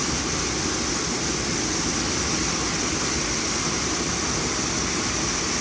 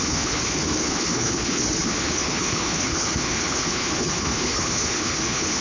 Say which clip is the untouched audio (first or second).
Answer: first